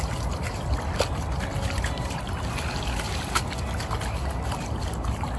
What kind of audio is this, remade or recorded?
recorded